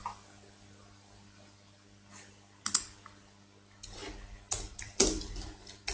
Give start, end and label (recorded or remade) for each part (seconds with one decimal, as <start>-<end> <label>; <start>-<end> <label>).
0.0-5.9 recorded